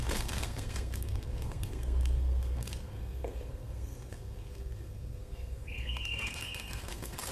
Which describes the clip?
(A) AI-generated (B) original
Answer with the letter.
A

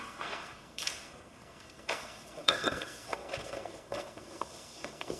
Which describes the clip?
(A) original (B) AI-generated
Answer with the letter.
B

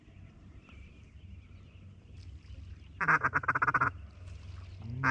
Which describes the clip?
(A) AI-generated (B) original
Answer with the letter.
B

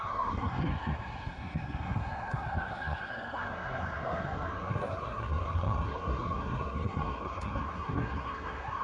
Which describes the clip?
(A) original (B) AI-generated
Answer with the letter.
B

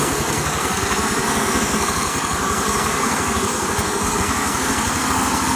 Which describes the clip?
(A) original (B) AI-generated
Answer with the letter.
B